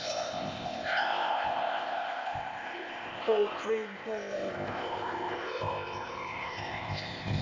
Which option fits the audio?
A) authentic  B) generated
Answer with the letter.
B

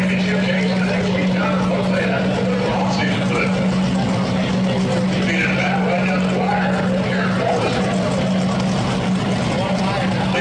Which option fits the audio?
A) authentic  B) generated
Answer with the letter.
A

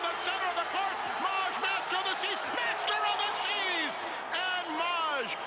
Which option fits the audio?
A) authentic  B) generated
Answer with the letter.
A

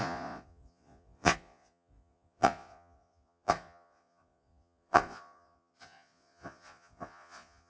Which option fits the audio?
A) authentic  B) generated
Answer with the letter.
B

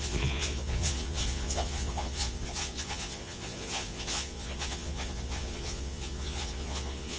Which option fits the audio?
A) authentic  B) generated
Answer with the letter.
B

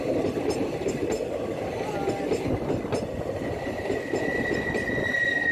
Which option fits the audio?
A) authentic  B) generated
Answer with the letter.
A